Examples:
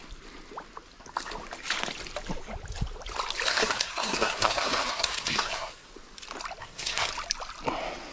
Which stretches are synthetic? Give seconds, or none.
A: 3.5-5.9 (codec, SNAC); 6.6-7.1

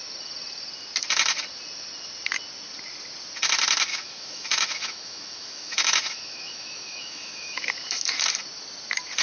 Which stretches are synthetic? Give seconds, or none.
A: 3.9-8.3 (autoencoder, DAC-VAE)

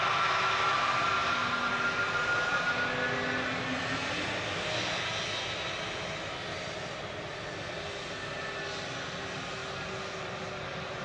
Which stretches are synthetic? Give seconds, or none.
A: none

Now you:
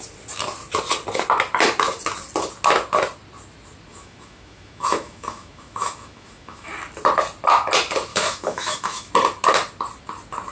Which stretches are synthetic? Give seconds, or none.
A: 3.9-6.7 (autoencoder, DAC-VAE); 8.1-9.1

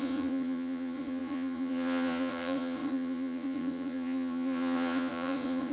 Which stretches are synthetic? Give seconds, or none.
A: 0.0-5.7 (vocoder, Vocos)

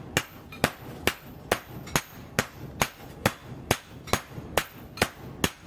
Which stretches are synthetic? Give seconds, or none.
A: none

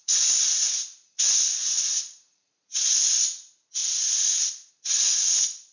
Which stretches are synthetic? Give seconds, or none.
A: 1.6-2.9 (vocoder, Vocos); 3.8-4.7

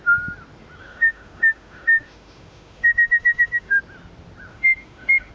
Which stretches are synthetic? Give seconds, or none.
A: 0.8-3.8 (autoencoder, DAC-VAE); 4.5-5.3